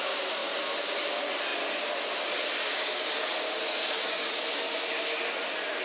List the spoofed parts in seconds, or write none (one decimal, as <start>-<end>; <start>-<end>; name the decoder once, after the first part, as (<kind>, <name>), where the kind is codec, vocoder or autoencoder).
2.6-4.4 (codec, DAC)